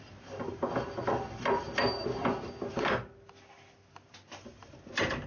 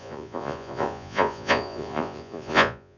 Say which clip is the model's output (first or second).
second